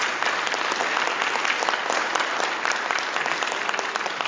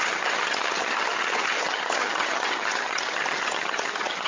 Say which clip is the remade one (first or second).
second